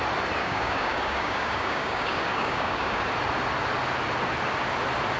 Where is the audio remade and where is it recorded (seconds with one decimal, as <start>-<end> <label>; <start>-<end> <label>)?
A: 0.0-0.4 recorded; 0.4-3.1 remade; 3.1-5.2 recorded